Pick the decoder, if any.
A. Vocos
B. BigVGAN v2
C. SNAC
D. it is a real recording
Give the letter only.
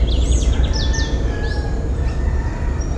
D